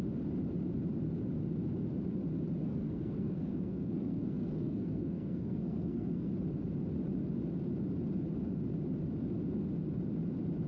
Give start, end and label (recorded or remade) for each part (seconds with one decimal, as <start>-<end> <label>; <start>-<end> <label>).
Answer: 0.0-2.6 recorded; 2.6-6.3 remade; 6.3-10.7 recorded